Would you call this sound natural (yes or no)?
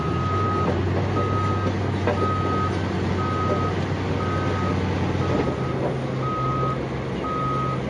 yes